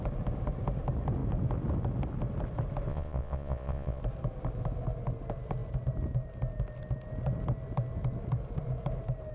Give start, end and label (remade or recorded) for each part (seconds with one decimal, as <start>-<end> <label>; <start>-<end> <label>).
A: 0.0-2.9 recorded; 2.9-4.0 remade; 4.0-9.3 recorded